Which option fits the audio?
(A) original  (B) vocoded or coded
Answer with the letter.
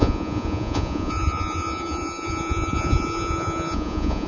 B